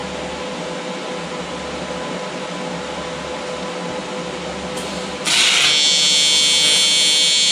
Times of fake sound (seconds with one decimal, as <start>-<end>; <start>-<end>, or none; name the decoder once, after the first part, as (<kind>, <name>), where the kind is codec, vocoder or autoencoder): none